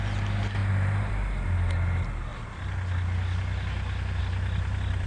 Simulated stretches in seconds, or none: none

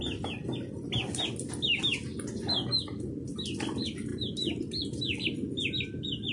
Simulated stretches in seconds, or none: none

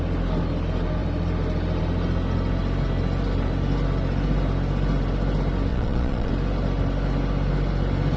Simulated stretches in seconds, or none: 5.7-6.3

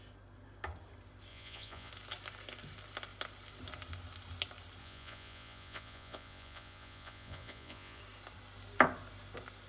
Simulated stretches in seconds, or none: 1.3-1.9; 4.8-8.0

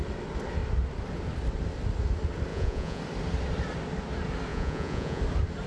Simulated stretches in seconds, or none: 2.5-3.0; 4.5-5.2

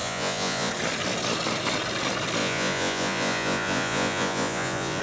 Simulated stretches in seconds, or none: 0.0-0.7; 2.4-5.0

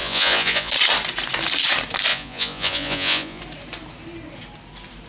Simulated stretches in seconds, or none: 0.0-0.7; 2.1-3.4

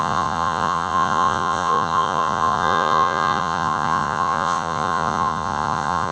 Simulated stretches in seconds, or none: 0.0-6.1